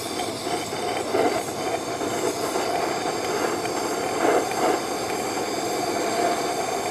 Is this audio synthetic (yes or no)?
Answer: no